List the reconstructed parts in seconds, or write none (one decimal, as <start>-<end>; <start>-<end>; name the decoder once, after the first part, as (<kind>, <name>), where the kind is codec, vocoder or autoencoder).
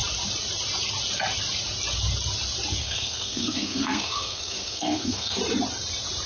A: 2.8-5.4 (codec, SNAC)